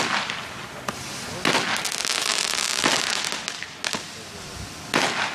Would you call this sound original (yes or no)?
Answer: yes